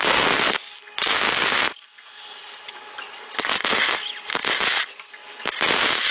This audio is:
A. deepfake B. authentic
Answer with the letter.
B